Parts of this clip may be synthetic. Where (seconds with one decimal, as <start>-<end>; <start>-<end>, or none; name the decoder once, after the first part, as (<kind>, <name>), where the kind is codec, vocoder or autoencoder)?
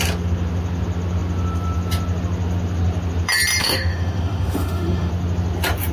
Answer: 3.6-5.1 (autoencoder, DAC-VAE)